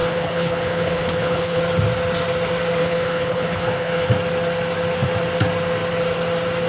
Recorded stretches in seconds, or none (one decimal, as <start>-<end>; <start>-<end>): 1.6-2.8; 4.1-6.7